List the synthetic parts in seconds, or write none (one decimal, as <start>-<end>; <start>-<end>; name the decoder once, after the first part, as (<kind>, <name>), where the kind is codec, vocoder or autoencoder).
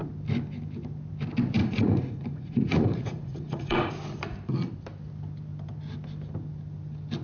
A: 1.6-3.9 (vocoder, Vocos)